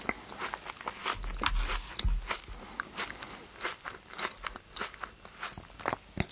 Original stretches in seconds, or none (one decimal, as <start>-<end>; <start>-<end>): 0.0-6.3